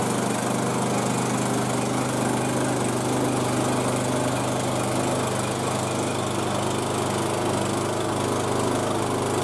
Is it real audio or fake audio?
real